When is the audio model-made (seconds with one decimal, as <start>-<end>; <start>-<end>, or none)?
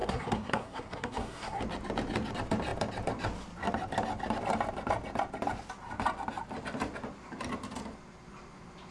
0.0-1.6